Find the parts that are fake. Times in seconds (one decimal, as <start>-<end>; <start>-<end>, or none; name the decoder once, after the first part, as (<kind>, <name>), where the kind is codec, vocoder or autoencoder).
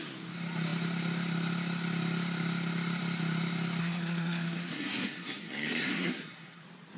3.8-6.6 (codec, SNAC)